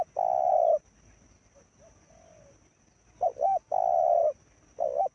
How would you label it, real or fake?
real